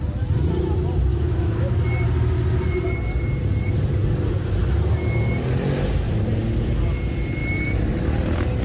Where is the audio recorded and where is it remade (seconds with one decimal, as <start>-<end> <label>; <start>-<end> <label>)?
0.0-1.1 recorded; 1.1-1.8 remade; 1.8-8.6 recorded